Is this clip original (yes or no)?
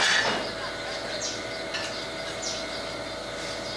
yes